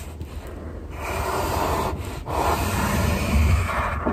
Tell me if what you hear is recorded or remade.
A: recorded